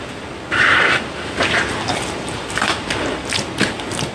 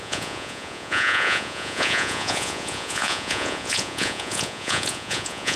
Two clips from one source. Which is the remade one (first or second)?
second